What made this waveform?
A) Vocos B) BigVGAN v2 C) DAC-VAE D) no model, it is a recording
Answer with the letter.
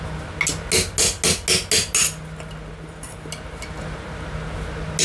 D